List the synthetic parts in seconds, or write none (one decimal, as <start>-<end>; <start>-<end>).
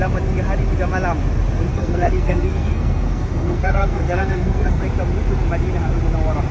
1.7-4.8